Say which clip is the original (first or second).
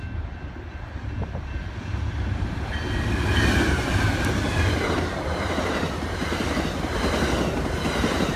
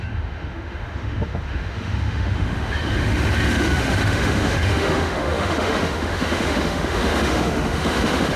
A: first